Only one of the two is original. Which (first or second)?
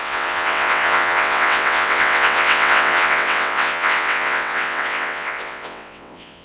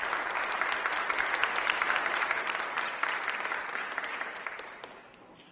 second